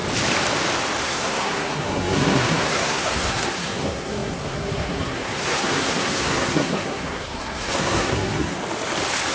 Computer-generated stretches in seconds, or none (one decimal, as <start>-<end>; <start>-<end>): 1.0-8.6